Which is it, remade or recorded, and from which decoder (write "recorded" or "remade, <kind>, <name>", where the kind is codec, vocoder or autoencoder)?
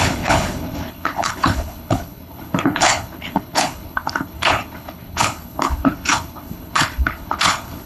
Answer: remade, codec, HILCodec